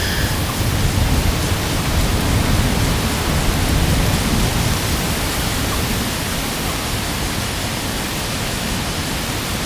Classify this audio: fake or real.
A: real